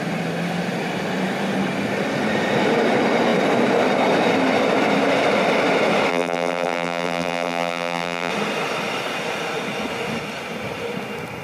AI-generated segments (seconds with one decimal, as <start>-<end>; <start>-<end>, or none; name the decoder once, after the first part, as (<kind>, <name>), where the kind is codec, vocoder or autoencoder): 6.1-8.3 (vocoder, BigVGAN v2)